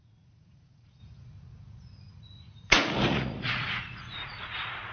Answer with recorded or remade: remade